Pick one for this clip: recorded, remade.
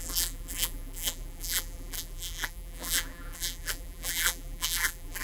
remade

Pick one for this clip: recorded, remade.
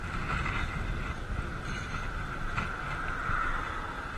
recorded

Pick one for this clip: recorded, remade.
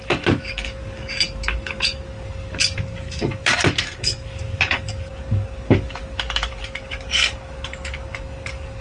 remade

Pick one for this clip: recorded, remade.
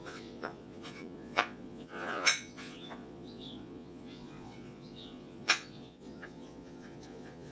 remade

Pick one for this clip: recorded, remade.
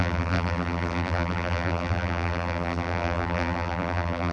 remade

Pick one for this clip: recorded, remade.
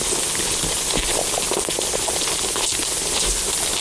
recorded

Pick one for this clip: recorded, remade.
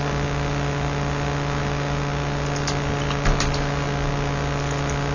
recorded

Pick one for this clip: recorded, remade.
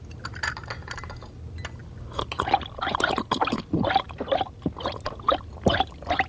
recorded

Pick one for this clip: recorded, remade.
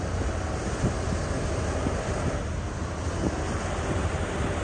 recorded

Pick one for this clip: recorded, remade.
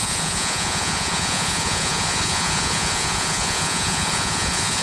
remade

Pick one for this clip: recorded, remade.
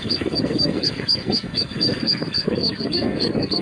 remade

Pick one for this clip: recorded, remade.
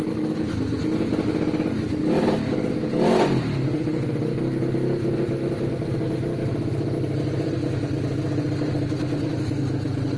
recorded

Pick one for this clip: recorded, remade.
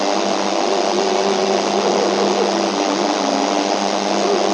recorded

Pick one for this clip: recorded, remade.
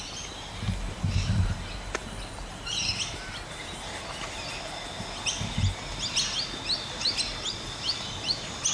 recorded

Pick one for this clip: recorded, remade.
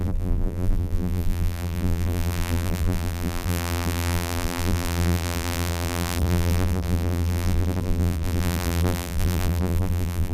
remade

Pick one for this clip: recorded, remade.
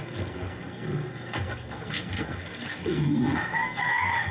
remade